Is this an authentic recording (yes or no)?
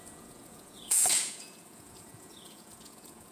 no